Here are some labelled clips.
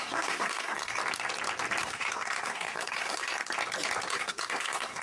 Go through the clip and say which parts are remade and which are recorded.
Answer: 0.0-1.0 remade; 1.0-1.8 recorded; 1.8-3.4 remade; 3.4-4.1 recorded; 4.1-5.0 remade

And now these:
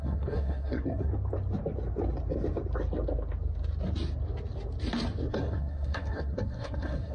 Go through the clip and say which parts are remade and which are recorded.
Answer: 0.0-1.1 remade; 1.1-5.3 recorded; 5.3-7.1 remade

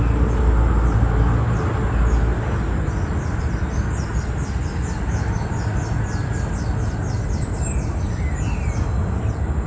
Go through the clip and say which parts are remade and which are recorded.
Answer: 0.0-9.7 recorded

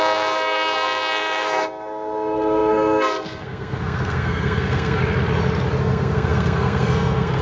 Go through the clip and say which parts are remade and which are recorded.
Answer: 0.0-5.0 remade; 5.0-5.8 recorded; 5.8-7.4 remade